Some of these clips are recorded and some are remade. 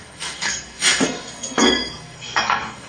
remade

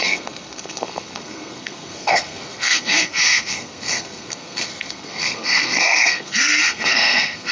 remade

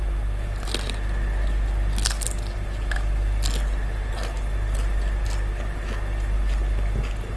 recorded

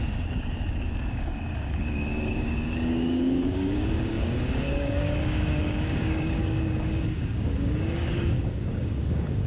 remade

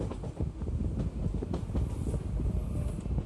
recorded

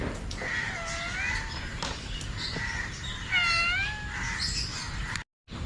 recorded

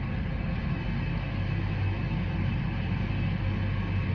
recorded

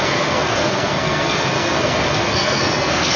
remade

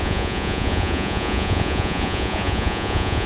remade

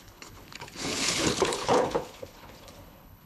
remade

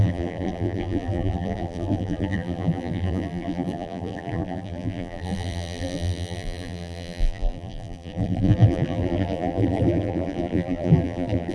remade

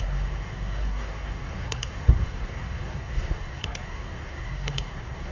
remade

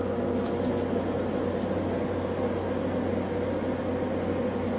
recorded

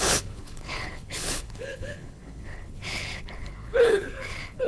remade